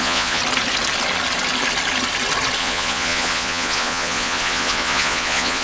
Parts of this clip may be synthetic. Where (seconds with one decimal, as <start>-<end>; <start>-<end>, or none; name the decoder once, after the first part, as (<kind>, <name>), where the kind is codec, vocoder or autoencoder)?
0.0-0.4 (vocoder, Vocos); 2.6-5.6